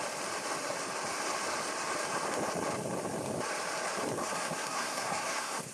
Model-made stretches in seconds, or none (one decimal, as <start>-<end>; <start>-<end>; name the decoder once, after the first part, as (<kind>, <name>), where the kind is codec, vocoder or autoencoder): 4.2-5.7 (codec, SNAC)